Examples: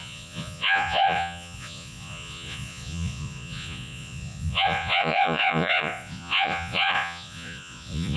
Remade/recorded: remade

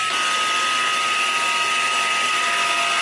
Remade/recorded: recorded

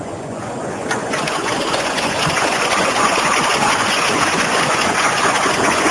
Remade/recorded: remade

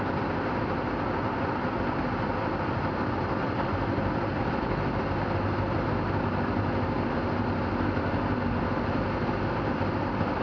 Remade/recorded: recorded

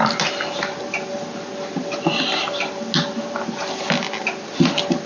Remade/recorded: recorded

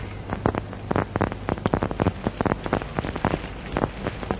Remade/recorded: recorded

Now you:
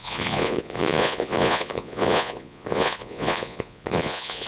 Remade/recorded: remade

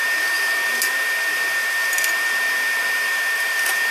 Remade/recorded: remade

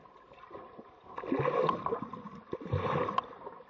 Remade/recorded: recorded